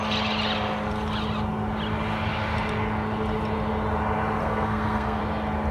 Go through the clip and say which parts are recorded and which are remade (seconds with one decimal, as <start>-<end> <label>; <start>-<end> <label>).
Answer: 0.0-4.4 recorded; 4.4-5.2 remade; 5.2-5.7 recorded